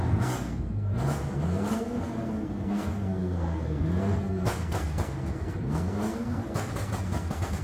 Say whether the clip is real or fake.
fake